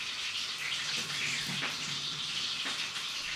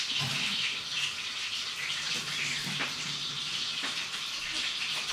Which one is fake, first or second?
second